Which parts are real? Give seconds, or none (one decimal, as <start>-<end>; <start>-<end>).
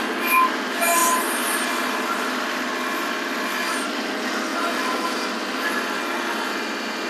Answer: 0.0-7.1